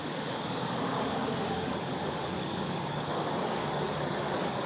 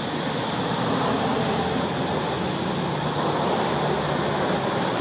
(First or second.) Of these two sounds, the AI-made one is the first